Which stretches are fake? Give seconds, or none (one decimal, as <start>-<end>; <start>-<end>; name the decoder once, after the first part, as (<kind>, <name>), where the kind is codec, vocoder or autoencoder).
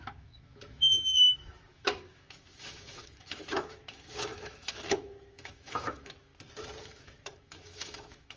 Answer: 0.0-6.3 (autoencoder, DAC-VAE); 6.8-8.4